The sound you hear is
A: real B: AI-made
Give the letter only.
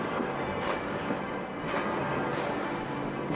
A